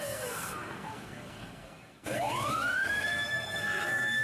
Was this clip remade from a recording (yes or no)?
yes